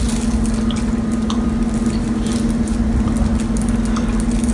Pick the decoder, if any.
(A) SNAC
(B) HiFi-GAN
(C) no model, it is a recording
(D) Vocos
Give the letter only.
C